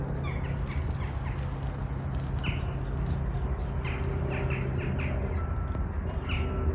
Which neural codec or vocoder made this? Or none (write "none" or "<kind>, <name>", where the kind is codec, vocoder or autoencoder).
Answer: none